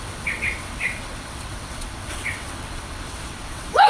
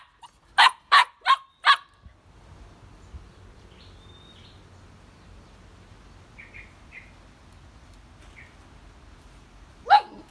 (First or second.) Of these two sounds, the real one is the second